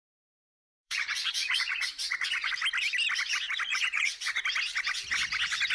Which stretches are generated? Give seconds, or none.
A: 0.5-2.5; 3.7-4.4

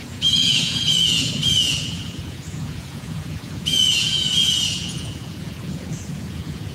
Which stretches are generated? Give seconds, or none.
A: 0.0-6.7

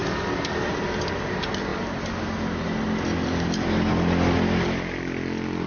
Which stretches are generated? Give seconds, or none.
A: none

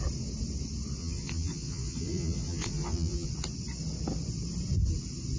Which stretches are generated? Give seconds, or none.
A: 1.0-3.3

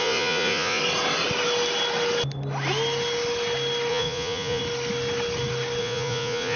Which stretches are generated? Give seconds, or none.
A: 0.0-0.8; 3.9-4.6; 5.8-6.6